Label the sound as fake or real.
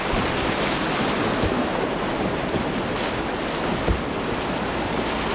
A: real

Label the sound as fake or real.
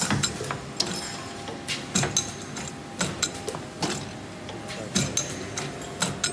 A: real